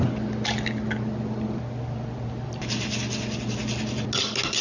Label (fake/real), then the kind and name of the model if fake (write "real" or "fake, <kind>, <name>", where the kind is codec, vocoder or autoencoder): real